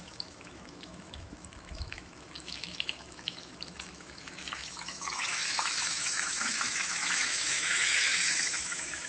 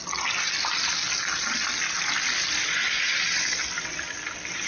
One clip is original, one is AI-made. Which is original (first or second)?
second